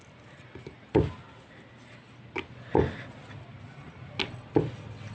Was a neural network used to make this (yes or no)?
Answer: no